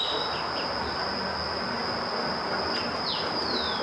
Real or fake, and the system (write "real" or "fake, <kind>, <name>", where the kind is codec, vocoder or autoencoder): real